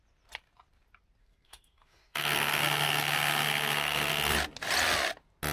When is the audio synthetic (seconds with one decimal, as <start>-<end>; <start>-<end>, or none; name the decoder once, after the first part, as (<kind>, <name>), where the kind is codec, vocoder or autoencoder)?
1.2-4.1 (codec, SNAC)